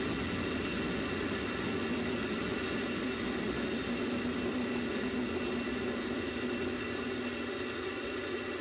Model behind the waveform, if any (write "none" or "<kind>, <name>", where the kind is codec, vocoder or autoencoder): none